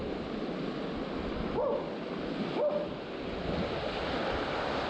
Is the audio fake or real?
real